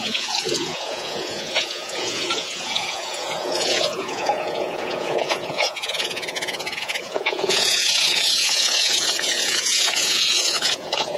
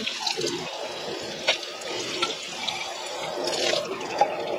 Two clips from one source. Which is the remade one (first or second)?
first